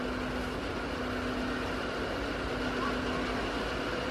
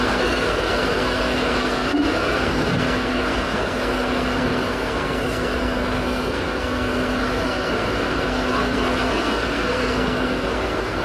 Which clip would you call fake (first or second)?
second